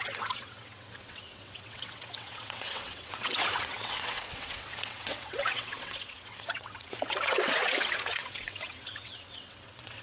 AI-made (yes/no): yes